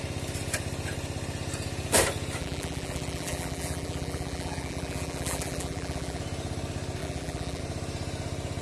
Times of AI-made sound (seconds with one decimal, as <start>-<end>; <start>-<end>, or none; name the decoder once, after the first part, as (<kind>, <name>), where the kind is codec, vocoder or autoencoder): 2.4-6.2 (vocoder, BigVGAN v2); 7.0-7.6